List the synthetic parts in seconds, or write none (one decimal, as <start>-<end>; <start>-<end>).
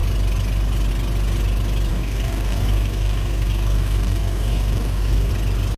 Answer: 1.9-5.3